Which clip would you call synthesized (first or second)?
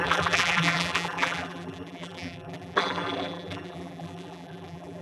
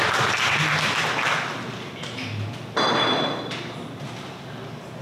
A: first